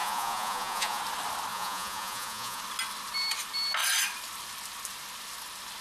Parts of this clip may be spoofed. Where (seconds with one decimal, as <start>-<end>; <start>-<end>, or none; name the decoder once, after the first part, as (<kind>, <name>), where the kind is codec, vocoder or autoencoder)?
0.0-1.0 (vocoder, Vocos); 1.5-2.6